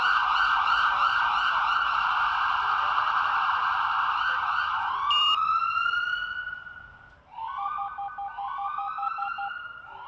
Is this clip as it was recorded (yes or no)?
yes